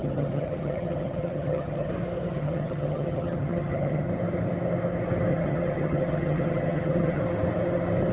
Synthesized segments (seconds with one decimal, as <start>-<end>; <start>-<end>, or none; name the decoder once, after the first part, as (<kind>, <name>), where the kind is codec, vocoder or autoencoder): 0.0-1.9 (vocoder, HiFi-GAN); 2.3-4.1; 5.3-7.2